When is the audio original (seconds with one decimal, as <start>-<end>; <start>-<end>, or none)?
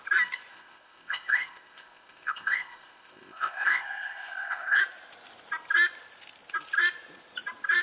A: 0.0-0.5; 4.8-7.8